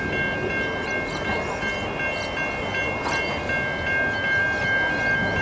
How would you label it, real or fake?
real